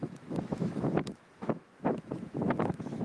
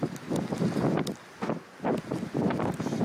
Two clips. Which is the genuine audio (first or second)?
second